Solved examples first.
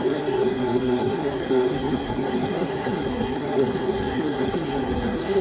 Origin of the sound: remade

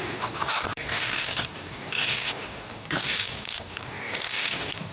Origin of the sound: remade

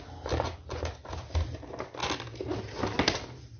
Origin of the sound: recorded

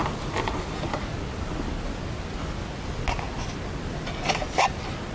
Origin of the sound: recorded